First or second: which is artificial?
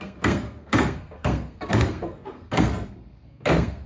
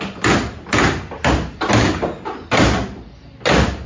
first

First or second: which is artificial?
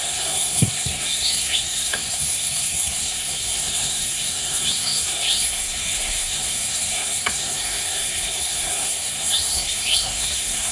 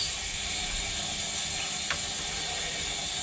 first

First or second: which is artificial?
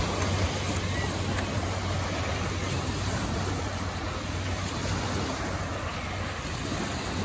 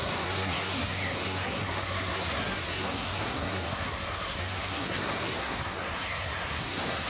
second